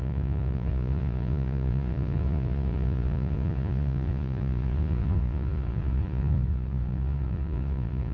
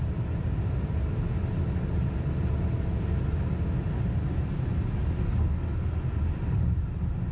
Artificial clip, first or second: first